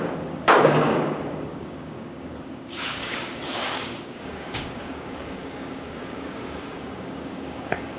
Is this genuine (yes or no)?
no